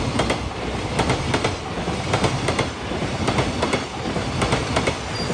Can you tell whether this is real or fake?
real